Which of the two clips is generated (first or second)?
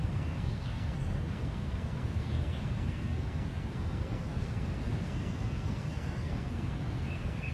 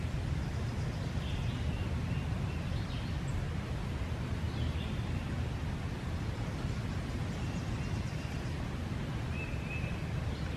first